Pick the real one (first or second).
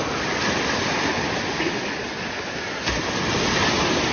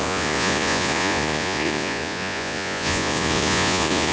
first